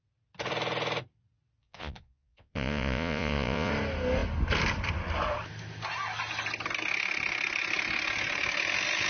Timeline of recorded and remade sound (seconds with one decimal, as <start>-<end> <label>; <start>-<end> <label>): 0.0-1.6 recorded; 1.6-3.7 remade; 3.7-9.1 recorded